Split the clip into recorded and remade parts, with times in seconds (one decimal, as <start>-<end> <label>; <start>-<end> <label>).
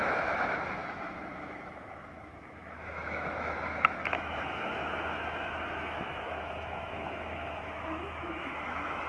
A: 0.0-9.1 remade